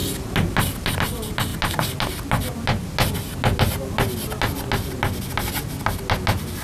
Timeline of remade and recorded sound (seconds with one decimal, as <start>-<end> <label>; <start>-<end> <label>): 0.0-6.6 recorded

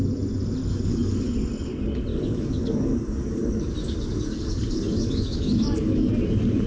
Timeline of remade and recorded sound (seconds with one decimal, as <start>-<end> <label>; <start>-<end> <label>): 0.0-0.7 recorded; 0.7-1.3 remade; 1.3-2.1 recorded; 2.1-6.1 remade; 6.1-6.7 recorded